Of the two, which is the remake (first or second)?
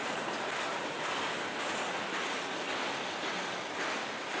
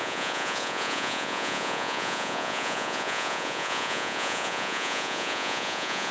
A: second